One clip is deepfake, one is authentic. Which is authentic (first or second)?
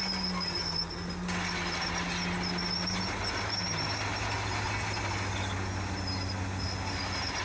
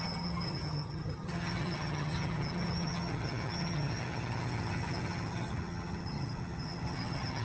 first